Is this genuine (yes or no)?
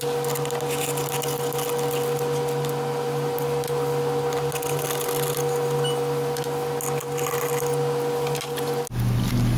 yes